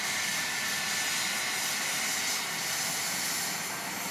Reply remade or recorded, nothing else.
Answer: recorded